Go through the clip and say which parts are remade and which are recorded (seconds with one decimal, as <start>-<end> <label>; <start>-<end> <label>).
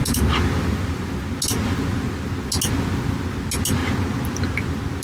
0.0-5.0 recorded